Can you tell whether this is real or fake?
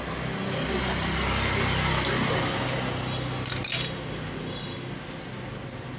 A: real